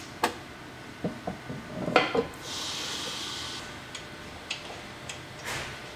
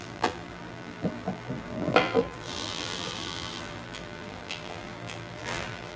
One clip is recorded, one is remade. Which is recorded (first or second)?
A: first